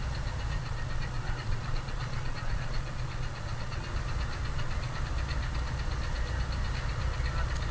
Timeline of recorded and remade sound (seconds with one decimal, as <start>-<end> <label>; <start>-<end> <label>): 0.0-0.6 recorded; 0.6-3.8 remade; 3.8-4.5 recorded; 4.5-5.0 remade; 5.0-7.7 recorded